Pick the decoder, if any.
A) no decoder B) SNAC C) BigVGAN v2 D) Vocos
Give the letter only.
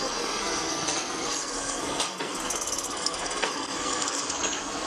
B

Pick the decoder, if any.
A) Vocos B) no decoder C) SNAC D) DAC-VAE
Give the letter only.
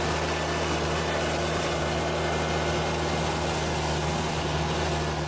B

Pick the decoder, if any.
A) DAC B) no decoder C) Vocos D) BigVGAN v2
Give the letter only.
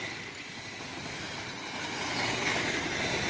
B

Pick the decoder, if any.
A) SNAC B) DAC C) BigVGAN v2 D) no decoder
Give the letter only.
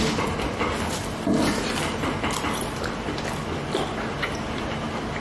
D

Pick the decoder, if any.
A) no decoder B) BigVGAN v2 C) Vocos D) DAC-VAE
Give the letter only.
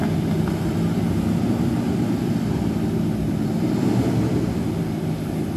A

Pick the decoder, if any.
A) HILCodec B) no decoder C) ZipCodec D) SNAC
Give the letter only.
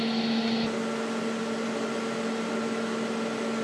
B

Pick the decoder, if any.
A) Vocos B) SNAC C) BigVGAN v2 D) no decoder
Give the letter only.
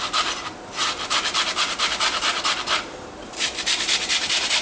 C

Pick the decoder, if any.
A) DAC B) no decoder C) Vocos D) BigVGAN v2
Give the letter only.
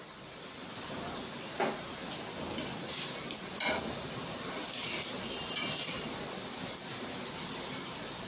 B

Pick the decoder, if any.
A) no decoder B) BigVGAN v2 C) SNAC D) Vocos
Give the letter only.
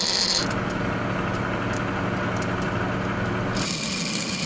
A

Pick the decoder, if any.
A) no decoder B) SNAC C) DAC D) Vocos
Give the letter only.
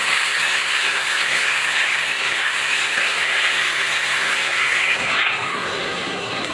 B